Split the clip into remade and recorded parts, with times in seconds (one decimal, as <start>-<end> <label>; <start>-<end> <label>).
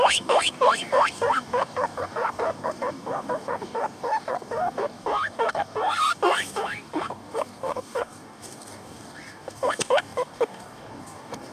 0.0-11.5 remade